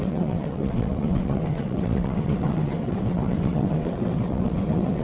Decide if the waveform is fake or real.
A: fake